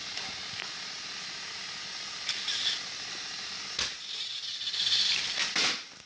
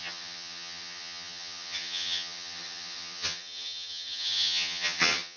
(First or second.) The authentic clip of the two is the first